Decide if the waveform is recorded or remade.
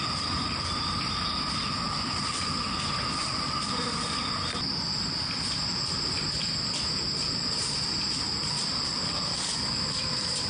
recorded